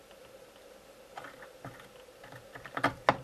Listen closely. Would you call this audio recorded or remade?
recorded